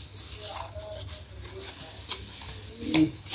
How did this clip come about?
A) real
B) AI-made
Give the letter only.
A